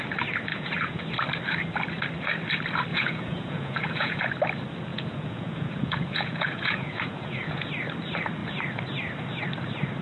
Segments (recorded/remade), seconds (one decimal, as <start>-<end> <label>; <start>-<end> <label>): 0.0-0.5 recorded; 0.5-1.0 remade; 1.0-2.9 recorded; 2.9-4.2 remade; 4.2-4.9 recorded; 4.9-7.7 remade; 7.7-10.0 recorded